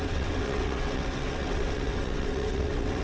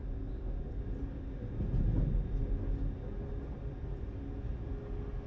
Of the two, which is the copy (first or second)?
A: first